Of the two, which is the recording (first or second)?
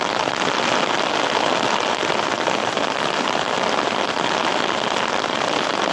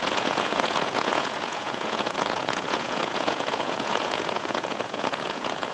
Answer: first